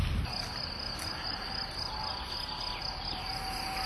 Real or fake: real